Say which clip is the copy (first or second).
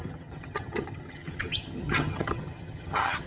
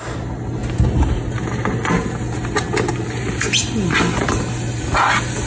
first